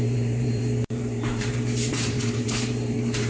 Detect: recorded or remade remade